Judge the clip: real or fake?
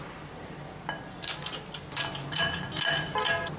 real